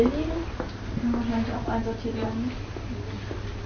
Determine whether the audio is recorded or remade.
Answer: recorded